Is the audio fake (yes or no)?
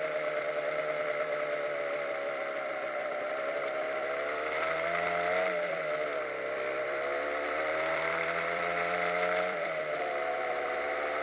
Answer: yes